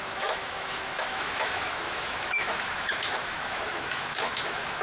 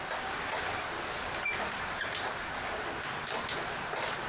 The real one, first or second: second